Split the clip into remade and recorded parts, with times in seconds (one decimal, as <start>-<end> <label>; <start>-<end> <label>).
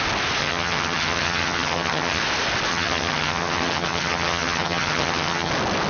0.0-0.4 recorded; 0.4-2.2 remade; 2.2-2.7 recorded; 2.7-5.5 remade; 5.5-5.9 recorded